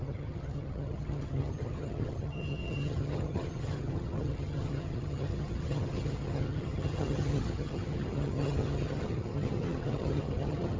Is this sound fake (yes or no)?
yes